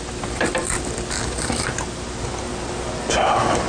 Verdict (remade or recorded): recorded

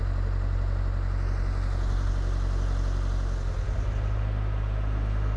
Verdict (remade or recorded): recorded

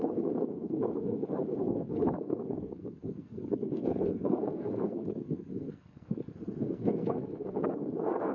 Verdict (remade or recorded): remade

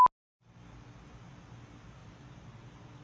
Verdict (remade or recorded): recorded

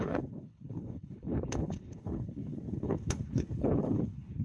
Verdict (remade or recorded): remade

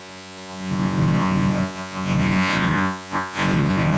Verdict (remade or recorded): remade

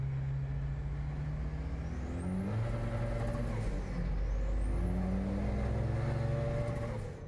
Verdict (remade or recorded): recorded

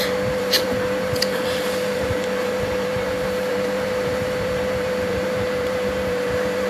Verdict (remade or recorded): remade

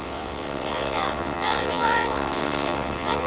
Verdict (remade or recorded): remade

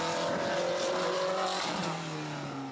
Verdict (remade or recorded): recorded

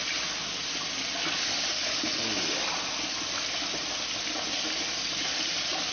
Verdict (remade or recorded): recorded